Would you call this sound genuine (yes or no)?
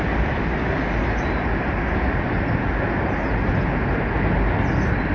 yes